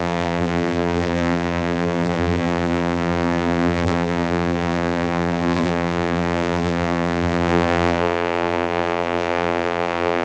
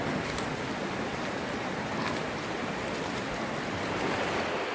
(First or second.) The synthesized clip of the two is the first